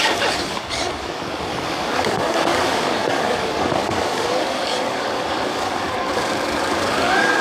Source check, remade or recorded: remade